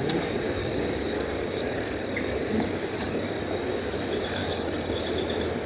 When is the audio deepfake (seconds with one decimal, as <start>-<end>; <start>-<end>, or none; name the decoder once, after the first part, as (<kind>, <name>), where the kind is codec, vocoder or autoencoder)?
0.6-3.4 (codec, DAC); 4.4-5.0